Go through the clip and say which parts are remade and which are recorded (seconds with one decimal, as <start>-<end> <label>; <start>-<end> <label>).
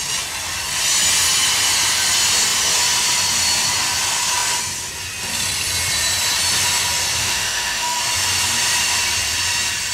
0.0-7.2 recorded; 7.2-8.0 remade; 8.0-9.9 recorded